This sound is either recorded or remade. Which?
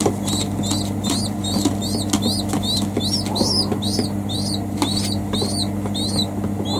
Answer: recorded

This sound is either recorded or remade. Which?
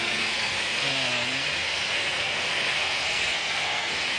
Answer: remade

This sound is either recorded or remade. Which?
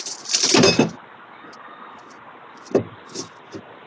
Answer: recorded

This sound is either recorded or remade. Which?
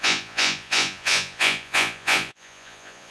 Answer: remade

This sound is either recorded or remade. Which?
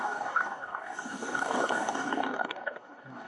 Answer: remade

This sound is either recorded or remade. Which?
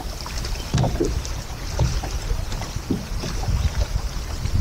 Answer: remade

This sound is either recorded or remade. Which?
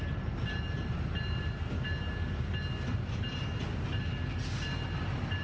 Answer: recorded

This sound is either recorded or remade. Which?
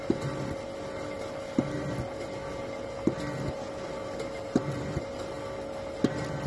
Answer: recorded